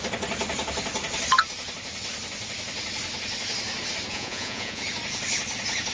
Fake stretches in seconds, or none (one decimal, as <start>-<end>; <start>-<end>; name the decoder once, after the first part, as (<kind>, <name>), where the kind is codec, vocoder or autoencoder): 4.1-4.8 (vocoder, Vocos)